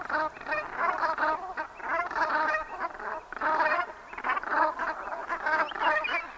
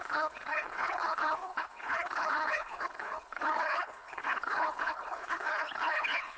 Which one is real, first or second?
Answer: first